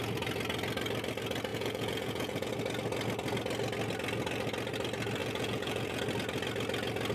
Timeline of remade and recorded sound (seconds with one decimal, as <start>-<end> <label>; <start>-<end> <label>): 0.0-1.5 recorded; 1.5-2.5 remade; 2.5-5.2 recorded; 5.2-6.0 remade; 6.0-7.1 recorded